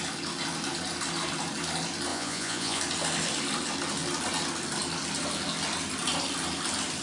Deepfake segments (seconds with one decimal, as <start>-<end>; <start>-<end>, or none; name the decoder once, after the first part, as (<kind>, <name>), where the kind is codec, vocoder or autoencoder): 2.1-2.8 (vocoder, Vocos)